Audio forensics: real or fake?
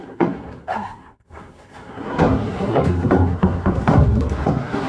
fake